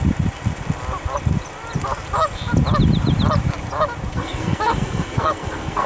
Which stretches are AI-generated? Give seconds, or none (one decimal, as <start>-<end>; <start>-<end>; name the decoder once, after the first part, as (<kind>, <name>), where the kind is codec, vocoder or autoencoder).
4.1-5.9 (codec, SNAC)

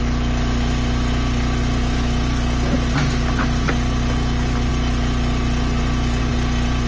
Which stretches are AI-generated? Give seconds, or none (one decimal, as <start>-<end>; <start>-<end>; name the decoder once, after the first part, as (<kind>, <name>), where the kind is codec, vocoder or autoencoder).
none

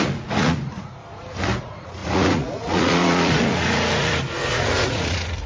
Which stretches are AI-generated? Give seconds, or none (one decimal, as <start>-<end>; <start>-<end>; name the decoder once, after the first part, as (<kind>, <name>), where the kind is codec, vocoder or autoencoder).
0.0-1.0 (vocoder, Vocos); 1.6-5.5

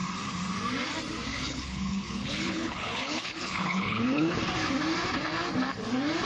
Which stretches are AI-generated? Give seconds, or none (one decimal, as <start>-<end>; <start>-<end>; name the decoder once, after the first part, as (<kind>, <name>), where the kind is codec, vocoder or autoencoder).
1.3-4.4 (codec, HILCodec)

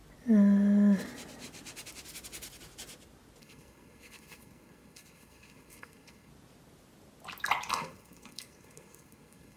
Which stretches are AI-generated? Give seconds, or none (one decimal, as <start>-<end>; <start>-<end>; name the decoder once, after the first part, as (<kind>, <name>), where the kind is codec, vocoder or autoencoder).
3.4-6.3 (codec, SNAC); 7.7-9.6

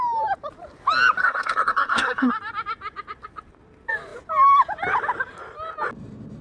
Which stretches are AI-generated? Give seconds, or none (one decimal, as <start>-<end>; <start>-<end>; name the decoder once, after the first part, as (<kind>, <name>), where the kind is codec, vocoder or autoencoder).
1.2-2.3 (codec, SNAC)

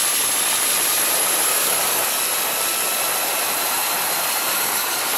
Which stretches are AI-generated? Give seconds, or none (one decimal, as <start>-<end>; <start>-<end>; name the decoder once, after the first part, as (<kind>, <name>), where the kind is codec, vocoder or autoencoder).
1.5-2.2 (codec, DAC); 4.5-5.2